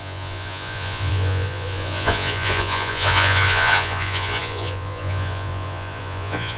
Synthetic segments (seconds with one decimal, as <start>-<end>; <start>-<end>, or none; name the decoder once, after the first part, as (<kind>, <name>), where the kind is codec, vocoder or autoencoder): 0.0-6.6 (vocoder, Vocos)